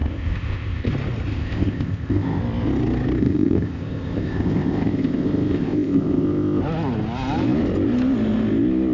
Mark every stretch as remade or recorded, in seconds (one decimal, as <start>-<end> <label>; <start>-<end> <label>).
0.0-0.9 remade; 0.9-1.3 recorded; 1.3-2.4 remade; 2.4-3.2 recorded; 3.2-6.6 remade; 6.6-8.9 recorded